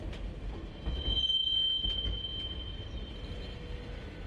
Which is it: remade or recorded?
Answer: recorded